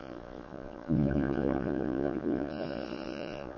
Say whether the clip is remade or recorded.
remade